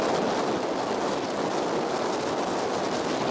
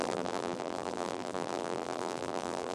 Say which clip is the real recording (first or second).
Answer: first